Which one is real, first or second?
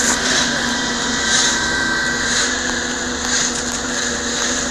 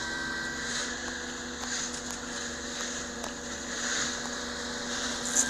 second